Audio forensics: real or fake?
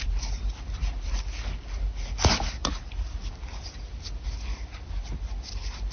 real